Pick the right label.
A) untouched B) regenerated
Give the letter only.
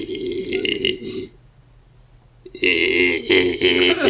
A